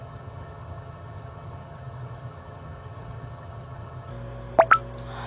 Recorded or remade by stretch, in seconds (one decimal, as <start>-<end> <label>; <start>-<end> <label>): 0.0-4.1 remade; 4.1-5.3 recorded